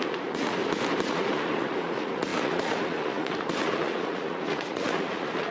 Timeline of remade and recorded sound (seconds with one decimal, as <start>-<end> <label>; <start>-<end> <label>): 0.0-0.6 remade; 0.6-1.1 recorded; 1.1-5.5 remade